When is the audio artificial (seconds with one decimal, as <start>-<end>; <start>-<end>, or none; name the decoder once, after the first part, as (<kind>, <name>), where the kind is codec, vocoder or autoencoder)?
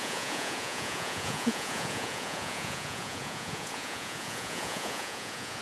0.0-5.6 (vocoder, Vocos)